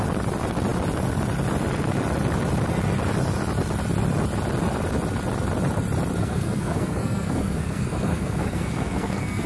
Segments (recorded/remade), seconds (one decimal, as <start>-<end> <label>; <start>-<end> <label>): 0.0-6.2 recorded; 6.2-9.5 remade